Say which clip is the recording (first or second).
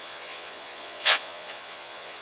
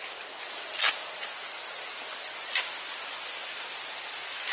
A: second